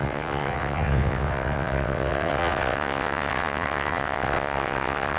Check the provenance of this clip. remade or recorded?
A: remade